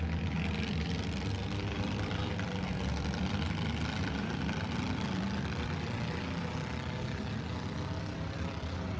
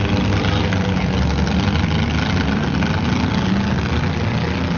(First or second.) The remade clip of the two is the first